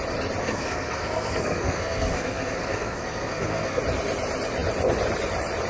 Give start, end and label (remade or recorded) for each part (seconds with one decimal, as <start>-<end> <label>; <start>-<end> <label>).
0.0-0.4 recorded; 0.4-3.8 remade; 3.8-5.7 recorded